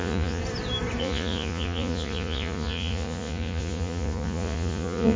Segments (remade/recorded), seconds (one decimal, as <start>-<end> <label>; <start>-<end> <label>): 0.0-0.4 remade; 0.4-1.0 recorded; 1.0-5.2 remade